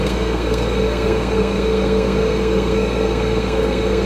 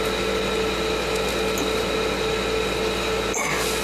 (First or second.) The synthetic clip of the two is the first